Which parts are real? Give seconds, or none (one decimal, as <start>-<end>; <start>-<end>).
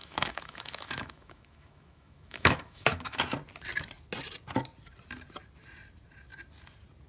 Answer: 3.2-7.1